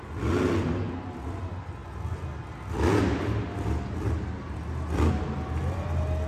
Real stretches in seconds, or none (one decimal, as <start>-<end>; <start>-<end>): 0.0-6.3